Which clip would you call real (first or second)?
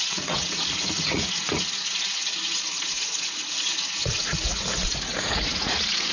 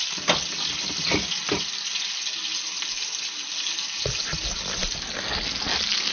second